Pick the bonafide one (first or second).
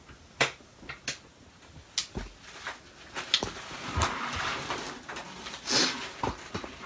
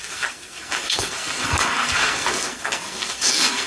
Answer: first